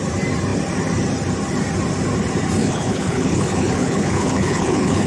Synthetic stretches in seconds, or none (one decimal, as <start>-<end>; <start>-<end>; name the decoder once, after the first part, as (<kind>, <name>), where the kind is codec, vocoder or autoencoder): 2.6-5.1 (codec, HILCodec)